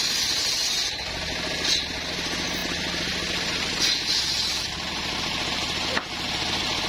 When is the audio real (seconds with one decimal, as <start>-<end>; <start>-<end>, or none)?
0.0-6.9

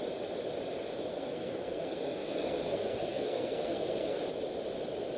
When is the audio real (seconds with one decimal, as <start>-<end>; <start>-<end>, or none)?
0.0-1.1; 4.2-5.2

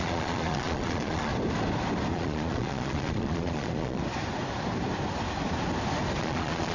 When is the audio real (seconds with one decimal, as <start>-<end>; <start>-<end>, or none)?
1.3-2.1; 4.0-6.2

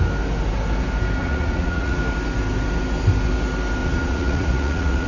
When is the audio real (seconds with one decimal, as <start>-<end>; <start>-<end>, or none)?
0.0-1.2; 2.0-3.8

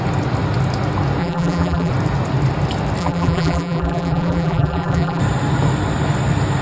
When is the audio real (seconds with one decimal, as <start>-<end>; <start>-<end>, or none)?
0.0-1.2; 1.9-3.0; 5.2-6.6